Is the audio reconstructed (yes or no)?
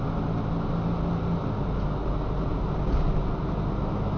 no